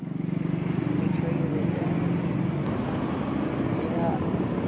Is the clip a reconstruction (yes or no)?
no